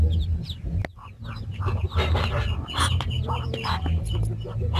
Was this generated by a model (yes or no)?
no